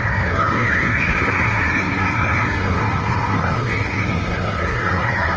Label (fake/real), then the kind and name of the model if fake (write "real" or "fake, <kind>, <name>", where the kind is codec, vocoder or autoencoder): fake, codec, SNAC